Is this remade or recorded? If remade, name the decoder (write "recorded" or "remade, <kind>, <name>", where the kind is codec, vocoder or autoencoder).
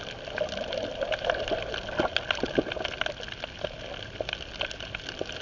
recorded